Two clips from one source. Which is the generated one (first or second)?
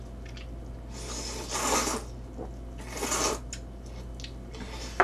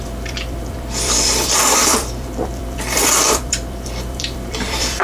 second